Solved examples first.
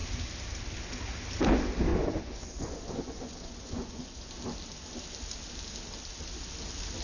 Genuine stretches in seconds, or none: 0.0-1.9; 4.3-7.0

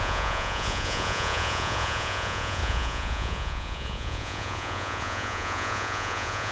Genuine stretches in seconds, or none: none